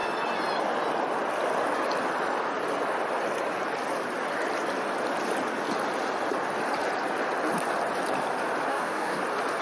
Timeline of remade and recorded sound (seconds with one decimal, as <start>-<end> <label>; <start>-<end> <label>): 0.0-8.7 recorded; 8.7-9.2 remade; 9.2-9.6 recorded